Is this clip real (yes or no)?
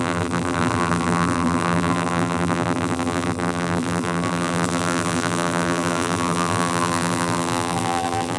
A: no